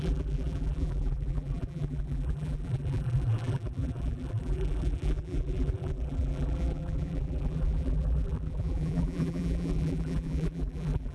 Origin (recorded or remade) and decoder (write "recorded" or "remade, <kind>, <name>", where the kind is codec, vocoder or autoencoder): remade, vocoder, BigVGAN v2